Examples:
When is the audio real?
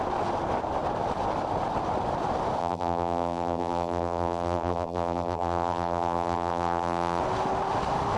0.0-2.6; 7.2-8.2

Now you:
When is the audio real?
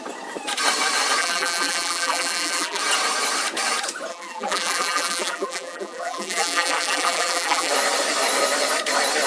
0.0-1.2; 2.8-4.1; 7.7-9.3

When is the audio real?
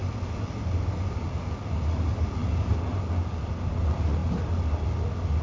0.0-5.4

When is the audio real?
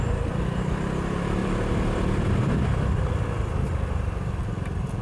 0.0-1.4; 4.4-5.0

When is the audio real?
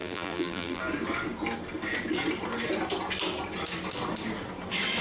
0.8-5.0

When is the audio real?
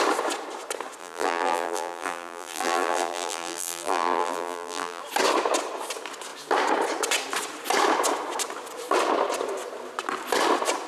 0.0-1.0; 5.0-10.9